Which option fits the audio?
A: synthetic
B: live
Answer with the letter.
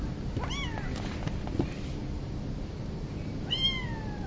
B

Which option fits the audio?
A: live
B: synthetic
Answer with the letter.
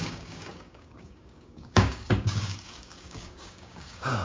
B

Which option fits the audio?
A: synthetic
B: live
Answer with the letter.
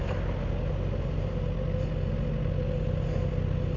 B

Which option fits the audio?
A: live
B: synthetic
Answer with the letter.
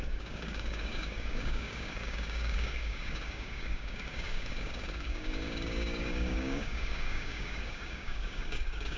B